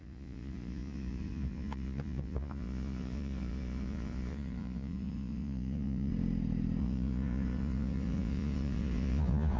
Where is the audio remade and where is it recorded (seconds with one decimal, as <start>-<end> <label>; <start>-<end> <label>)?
0.0-6.1 remade; 6.1-6.8 recorded; 6.8-9.6 remade